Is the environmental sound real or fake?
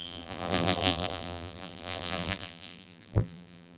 fake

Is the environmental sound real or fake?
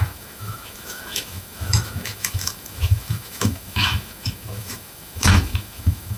fake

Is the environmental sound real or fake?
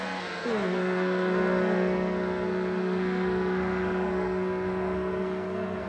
fake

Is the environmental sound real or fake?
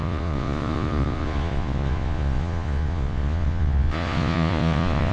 fake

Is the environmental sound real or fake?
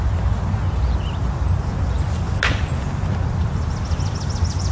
real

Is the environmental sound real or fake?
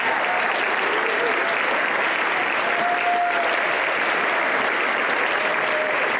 real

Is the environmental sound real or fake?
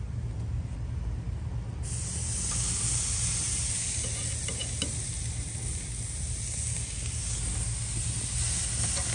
real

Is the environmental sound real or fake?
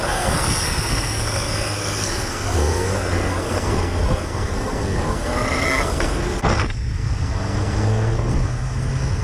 fake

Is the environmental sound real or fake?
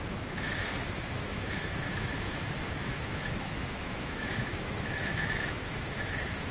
fake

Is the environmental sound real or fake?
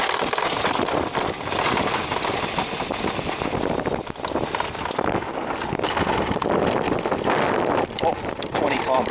fake